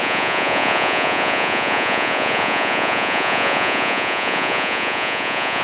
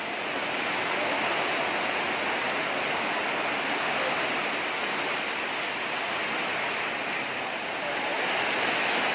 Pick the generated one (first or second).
first